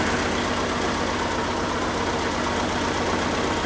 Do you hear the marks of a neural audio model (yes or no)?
no